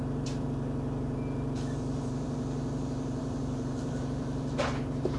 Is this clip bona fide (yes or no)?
no